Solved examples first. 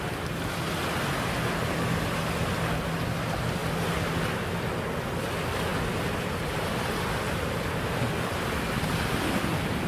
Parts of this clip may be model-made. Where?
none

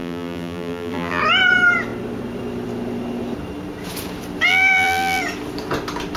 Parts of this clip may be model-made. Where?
0.0-1.2 (vocoder, BigVGAN v2); 4.5-5.2

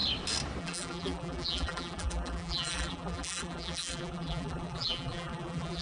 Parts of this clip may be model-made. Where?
0.6-5.8 (vocoder, BigVGAN v2)

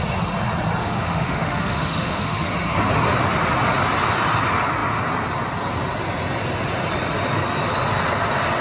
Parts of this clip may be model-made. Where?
0.8-2.5 (autoencoder, DAC-VAE)

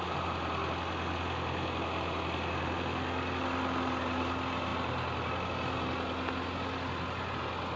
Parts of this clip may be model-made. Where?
none